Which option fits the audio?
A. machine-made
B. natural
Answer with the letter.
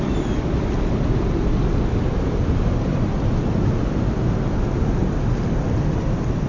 B